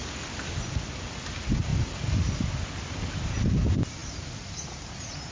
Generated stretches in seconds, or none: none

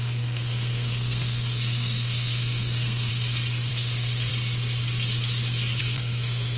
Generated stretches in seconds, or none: 0.0-3.1; 3.7-4.3; 5.8-6.6